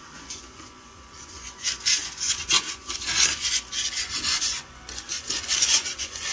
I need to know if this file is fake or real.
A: fake